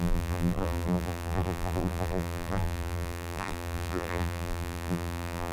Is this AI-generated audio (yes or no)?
yes